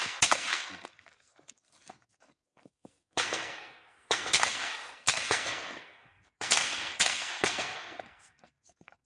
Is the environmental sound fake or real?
fake